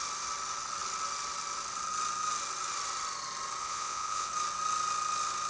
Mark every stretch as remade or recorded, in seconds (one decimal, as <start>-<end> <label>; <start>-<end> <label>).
0.0-3.6 recorded; 3.6-4.3 remade; 4.3-5.5 recorded